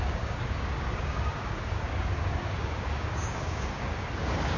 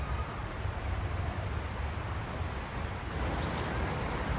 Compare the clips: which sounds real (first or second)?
second